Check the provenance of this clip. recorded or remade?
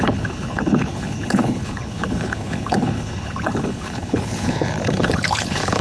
remade